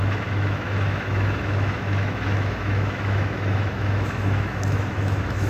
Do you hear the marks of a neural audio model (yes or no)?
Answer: yes